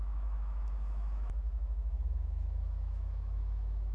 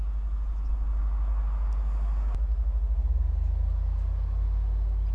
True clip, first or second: second